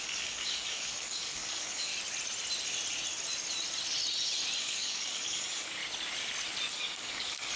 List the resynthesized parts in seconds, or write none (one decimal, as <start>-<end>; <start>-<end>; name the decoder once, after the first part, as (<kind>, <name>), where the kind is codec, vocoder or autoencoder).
0.0-1.9 (codec, DAC); 4.6-5.8; 6.7-7.6